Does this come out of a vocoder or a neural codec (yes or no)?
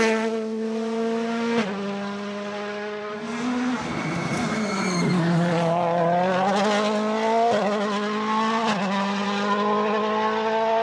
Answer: no